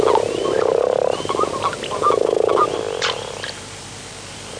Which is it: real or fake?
real